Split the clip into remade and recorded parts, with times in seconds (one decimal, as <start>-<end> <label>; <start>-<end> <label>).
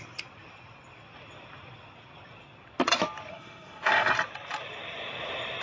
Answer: 0.0-3.3 recorded; 3.3-4.1 remade; 4.1-5.6 recorded